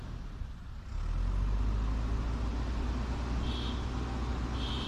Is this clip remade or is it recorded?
recorded